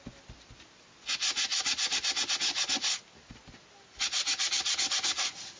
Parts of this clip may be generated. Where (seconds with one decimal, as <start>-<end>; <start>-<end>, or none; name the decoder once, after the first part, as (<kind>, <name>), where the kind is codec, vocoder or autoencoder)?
none